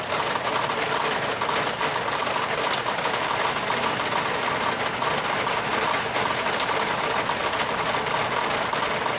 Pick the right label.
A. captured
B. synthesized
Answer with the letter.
A